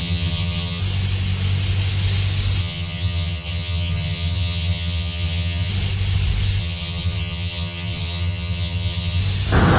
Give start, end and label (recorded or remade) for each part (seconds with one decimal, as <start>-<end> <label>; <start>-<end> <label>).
0.0-0.8 remade; 0.8-2.6 recorded; 2.6-5.7 remade; 5.7-6.6 recorded; 6.6-9.2 remade; 9.2-9.8 recorded